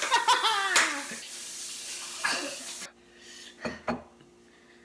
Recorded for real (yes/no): yes